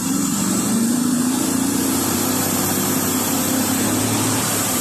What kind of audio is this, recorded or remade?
remade